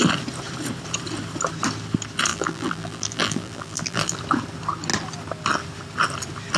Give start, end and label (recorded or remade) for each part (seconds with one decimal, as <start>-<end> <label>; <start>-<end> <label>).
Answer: 0.0-2.3 recorded; 2.3-4.2 remade; 4.2-6.6 recorded